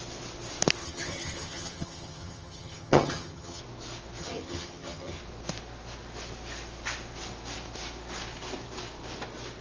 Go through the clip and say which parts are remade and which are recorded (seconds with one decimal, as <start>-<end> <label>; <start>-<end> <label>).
0.0-0.8 recorded; 0.8-3.6 remade; 3.6-4.2 recorded; 4.2-5.2 remade; 5.2-9.6 recorded